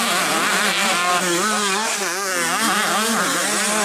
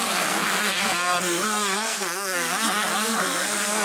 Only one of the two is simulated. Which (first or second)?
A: second